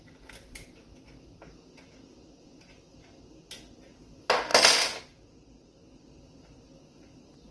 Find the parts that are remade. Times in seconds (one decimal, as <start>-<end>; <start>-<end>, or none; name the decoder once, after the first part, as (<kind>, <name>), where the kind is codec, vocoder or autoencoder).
none